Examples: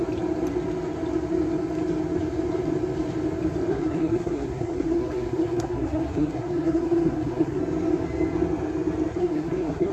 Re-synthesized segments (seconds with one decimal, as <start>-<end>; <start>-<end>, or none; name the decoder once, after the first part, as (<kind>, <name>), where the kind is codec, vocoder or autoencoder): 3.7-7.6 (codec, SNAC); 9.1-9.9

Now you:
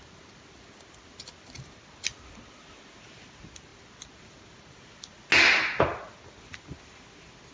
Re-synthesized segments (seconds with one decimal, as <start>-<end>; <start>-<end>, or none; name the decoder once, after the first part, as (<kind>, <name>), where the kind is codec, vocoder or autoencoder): none

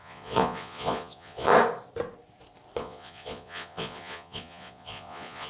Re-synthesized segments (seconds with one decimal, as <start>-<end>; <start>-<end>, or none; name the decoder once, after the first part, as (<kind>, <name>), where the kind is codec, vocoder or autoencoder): 0.0-1.5 (vocoder, Vocos); 2.8-5.5